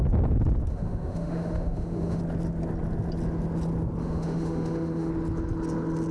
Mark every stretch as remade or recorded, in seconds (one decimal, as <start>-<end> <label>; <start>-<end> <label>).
0.0-0.7 recorded; 0.7-2.2 remade; 2.2-4.0 recorded; 4.0-5.1 remade; 5.1-6.1 recorded